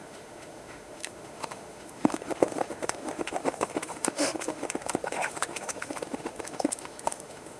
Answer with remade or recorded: remade